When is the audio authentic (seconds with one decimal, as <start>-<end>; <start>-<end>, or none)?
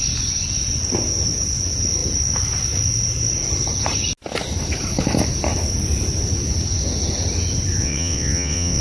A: 0.0-7.8